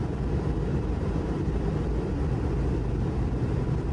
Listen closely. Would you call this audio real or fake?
fake